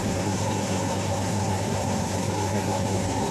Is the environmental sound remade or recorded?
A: remade